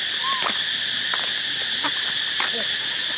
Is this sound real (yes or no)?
yes